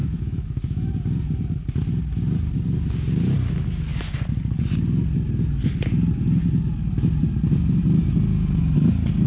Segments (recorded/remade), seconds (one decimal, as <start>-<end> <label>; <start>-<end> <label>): 0.0-0.9 remade; 0.9-9.3 recorded